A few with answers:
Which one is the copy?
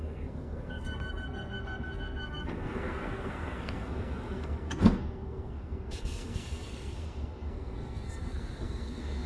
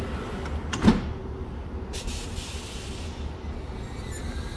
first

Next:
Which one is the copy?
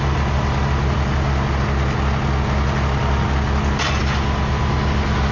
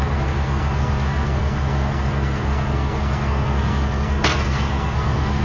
second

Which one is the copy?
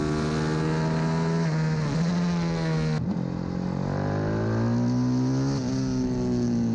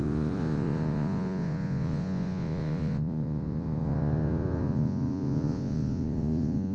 second